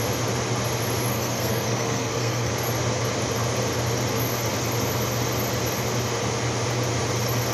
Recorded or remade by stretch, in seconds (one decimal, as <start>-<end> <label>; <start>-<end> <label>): 0.0-1.1 recorded; 1.1-2.5 remade; 2.5-7.5 recorded